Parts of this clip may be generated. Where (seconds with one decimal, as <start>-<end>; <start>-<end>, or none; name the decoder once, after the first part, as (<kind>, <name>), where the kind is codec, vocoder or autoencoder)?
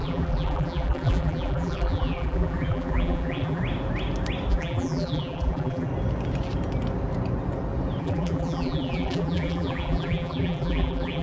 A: 0.0-3.6 (vocoder, BigVGAN v2); 4.5-5.9; 8.0-11.2